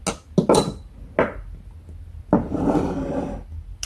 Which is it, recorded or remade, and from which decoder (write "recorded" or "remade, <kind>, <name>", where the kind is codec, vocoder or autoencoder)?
recorded